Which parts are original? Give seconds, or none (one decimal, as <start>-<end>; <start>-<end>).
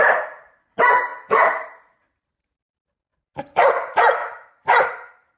none